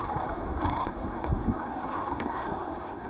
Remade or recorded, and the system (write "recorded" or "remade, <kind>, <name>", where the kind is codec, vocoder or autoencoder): remade, codec, SNAC